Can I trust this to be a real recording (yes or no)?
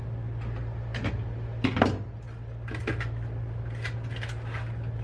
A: yes